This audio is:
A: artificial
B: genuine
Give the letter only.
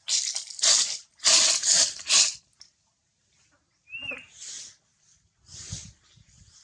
B